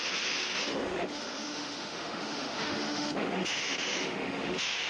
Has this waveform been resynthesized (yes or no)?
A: yes